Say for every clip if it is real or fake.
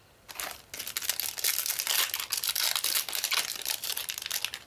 real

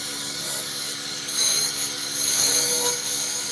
fake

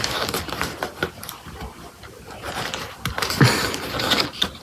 real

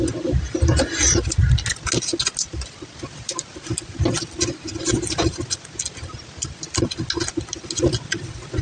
real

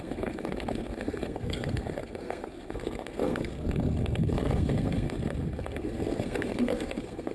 fake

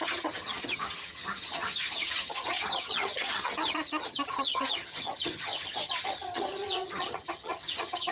fake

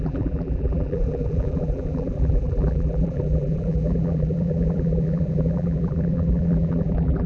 fake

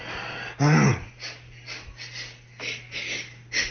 real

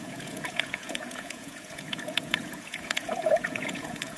fake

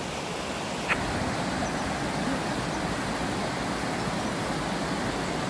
real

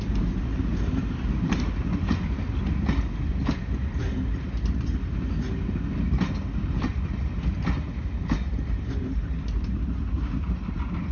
real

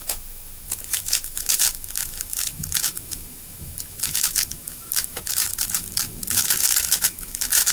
fake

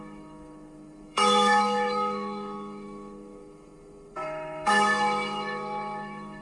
fake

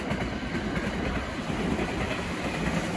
fake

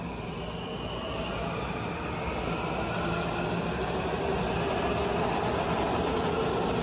real